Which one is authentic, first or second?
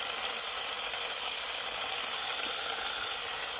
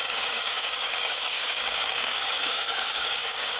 first